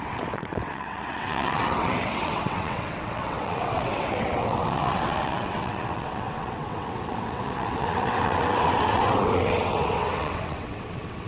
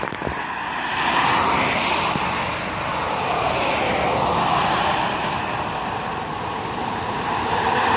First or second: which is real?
second